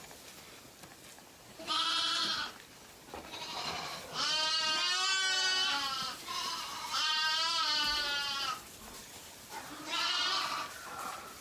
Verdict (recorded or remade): recorded